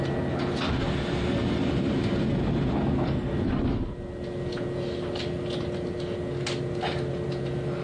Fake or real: real